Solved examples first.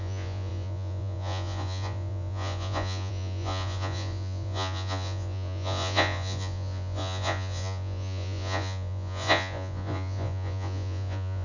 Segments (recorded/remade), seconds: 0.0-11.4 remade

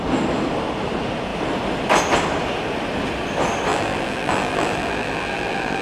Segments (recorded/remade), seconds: 0.0-3.7 recorded; 3.7-5.8 remade

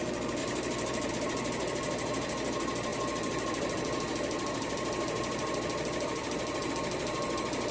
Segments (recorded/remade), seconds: 0.0-0.4 recorded; 0.4-1.1 remade; 1.1-2.9 recorded; 2.9-6.7 remade; 6.7-7.7 recorded

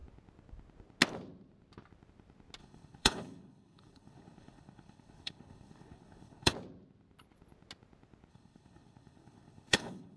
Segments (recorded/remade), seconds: 0.0-2.6 recorded; 2.6-6.5 remade; 6.5-8.3 recorded; 8.3-10.2 remade

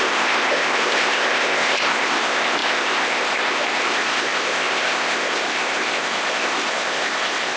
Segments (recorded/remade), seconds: 0.0-7.6 remade